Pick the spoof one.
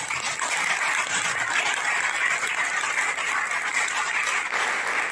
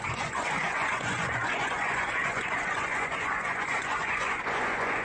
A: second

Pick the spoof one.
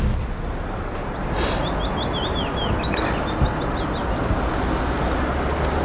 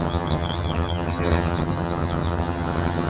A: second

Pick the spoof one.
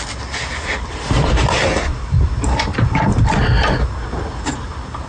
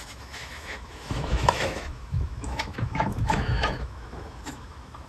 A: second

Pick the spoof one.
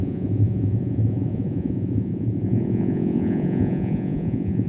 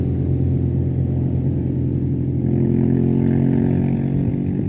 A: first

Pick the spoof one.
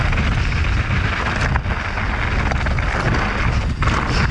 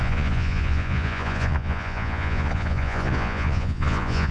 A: second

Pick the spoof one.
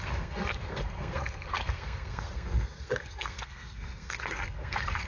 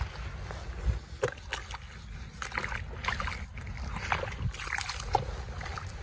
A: first